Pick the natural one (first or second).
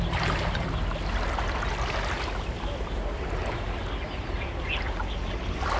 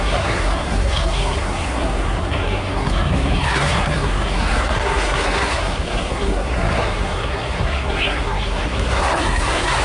first